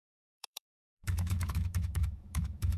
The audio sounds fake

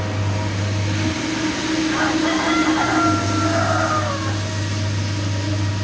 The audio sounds real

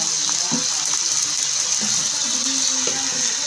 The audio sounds real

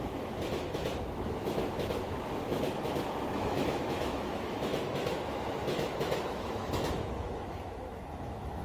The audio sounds fake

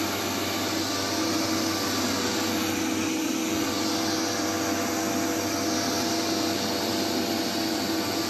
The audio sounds real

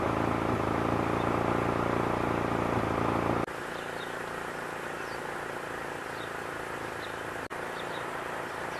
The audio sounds real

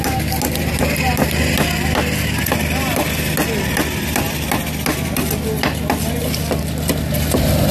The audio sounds real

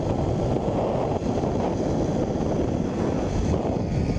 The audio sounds real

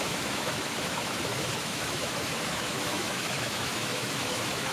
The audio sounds fake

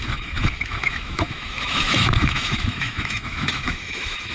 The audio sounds fake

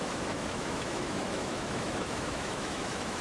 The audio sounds fake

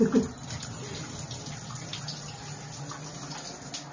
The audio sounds real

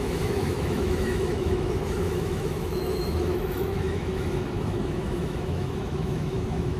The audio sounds fake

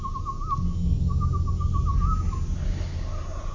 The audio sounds real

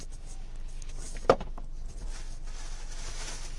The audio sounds real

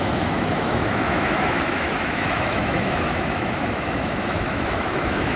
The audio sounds fake